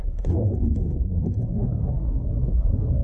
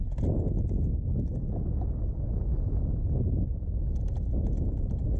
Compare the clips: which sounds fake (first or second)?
first